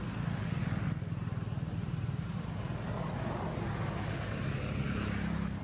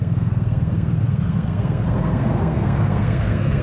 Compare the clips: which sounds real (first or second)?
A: first